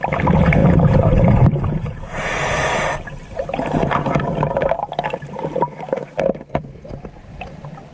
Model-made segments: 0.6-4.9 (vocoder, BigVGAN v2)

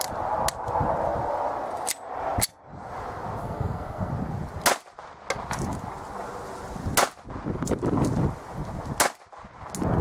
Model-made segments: 3.4-4.1 (codec, SNAC)

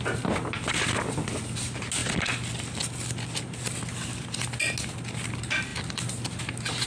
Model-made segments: none

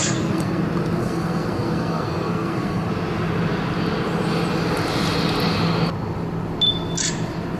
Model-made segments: 0.0-0.6 (codec, SNAC); 1.0-2.9

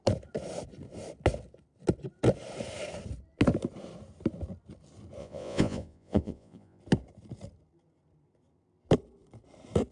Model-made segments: 5.2-6.8 (vocoder, Vocos)

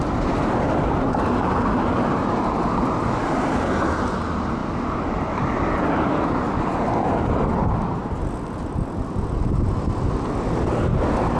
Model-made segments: none

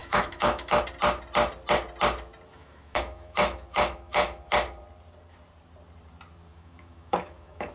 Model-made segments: 0.0-0.8 (autoencoder, DAC-VAE); 2.5-4.5; 6.5-7.7